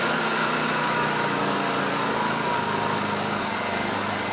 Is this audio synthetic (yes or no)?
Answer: yes